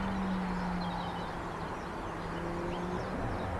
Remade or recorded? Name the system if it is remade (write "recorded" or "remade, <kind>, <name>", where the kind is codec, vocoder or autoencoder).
recorded